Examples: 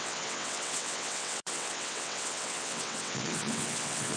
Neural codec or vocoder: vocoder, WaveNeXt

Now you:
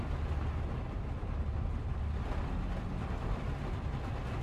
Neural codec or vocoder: none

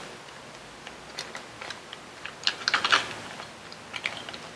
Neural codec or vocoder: none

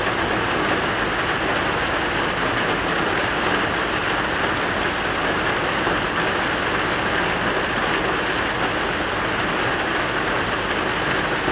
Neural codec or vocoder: none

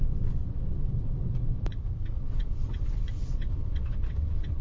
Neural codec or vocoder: vocoder, WaveNeXt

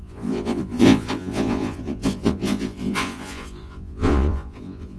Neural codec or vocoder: vocoder, Vocos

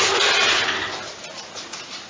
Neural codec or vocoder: none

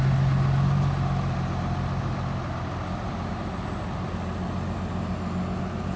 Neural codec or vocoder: none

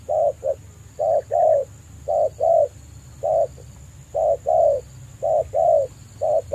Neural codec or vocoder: none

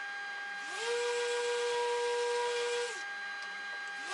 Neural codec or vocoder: none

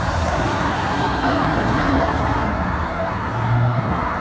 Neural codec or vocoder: codec, SNAC